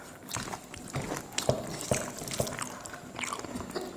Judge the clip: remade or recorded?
recorded